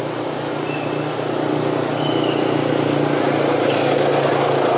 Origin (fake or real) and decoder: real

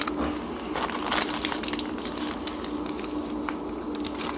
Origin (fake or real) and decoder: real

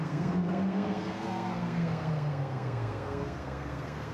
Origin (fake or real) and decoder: fake, codec, SNAC